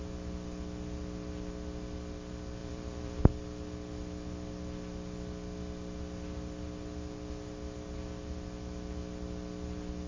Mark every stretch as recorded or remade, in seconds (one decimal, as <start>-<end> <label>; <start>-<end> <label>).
0.0-2.6 recorded; 2.6-3.2 remade; 3.2-10.1 recorded